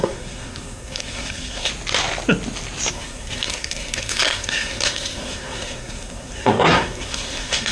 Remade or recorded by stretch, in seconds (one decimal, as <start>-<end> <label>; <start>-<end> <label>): 0.0-1.7 remade; 1.7-2.9 recorded; 2.9-7.7 remade